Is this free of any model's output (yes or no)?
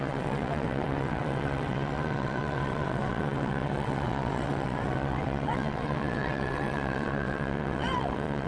no